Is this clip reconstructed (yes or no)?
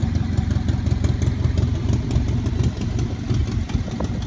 no